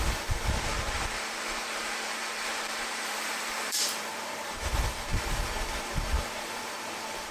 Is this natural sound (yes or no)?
no